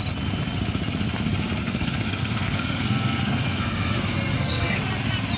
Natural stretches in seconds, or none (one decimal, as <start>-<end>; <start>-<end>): 0.0-1.6; 4.8-5.4